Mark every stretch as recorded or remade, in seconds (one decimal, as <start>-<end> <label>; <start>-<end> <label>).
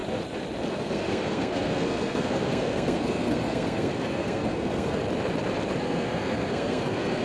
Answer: 0.0-0.7 recorded; 0.7-5.0 remade; 5.0-5.8 recorded; 5.8-7.2 remade